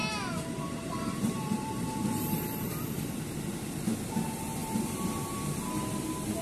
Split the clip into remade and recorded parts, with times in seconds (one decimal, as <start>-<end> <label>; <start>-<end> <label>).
0.0-3.0 remade; 3.0-4.6 recorded; 4.6-5.3 remade; 5.3-6.4 recorded